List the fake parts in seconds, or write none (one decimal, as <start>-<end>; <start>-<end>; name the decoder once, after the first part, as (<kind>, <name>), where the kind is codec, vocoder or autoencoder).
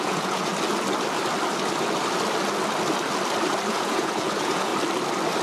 0.0-0.5 (vocoder, Vocos); 3.7-4.7